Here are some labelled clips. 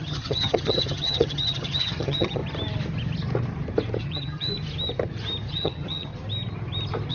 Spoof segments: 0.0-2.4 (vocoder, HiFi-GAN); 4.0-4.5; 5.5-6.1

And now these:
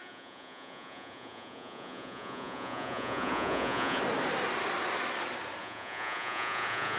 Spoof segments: 0.0-4.0 (vocoder, Vocos); 5.6-7.0